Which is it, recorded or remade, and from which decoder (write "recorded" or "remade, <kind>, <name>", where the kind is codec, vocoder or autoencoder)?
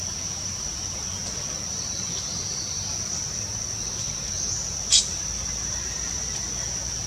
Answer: recorded